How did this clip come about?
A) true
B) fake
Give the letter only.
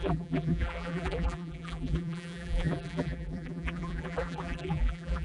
B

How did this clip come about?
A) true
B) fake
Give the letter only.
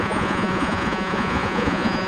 B